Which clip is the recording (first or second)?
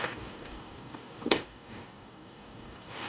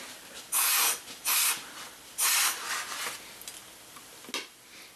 second